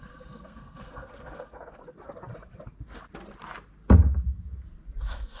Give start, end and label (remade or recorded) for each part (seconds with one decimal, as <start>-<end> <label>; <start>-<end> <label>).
0.0-1.8 remade; 1.8-5.0 recorded; 5.0-5.4 remade